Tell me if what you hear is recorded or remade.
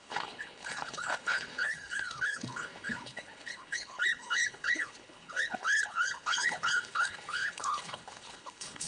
remade